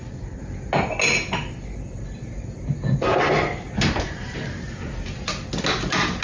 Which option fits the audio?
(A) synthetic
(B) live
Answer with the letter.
B